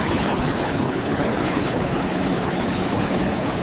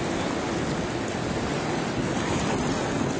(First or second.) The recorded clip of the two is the second